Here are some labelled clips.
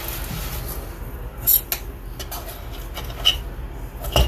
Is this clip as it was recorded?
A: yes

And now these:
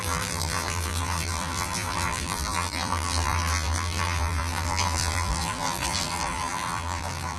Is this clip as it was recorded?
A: no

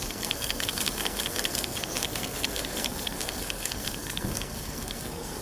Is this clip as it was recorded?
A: no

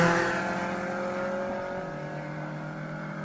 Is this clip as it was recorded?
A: yes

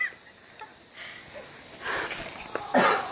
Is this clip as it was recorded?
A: yes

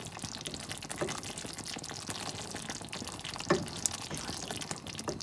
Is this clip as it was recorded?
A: yes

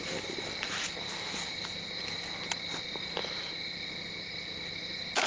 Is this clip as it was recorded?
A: yes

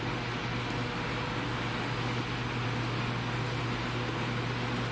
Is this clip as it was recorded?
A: yes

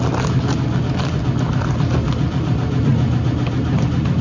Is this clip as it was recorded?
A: yes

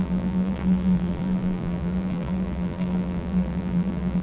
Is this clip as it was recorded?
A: no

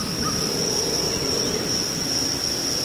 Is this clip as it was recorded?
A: yes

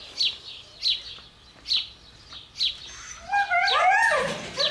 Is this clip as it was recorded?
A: yes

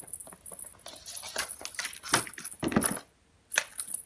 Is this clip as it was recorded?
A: yes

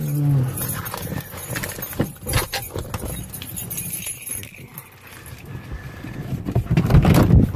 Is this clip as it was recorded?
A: yes